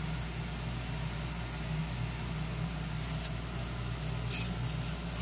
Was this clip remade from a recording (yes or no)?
no